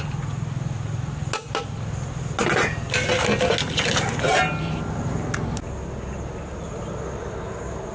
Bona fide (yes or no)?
yes